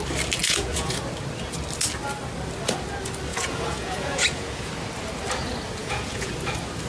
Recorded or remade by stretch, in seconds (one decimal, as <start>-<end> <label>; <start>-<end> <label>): 0.0-0.4 recorded; 0.4-1.0 remade; 1.0-3.3 recorded; 3.3-4.7 remade; 4.7-5.8 recorded; 5.8-6.3 remade; 6.3-6.9 recorded